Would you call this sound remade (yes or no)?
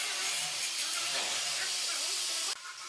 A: no